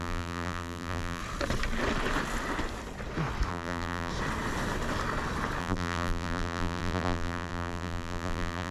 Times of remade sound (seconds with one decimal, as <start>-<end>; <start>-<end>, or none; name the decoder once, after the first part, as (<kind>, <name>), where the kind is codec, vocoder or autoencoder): 0.0-1.2 (vocoder, BigVGAN v2); 3.5-4.1; 5.6-8.7